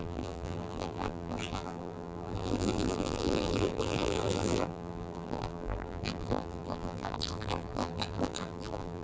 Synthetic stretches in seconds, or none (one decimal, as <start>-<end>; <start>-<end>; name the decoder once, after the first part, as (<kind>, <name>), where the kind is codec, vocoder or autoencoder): 0.0-9.0 (vocoder, BigVGAN v2)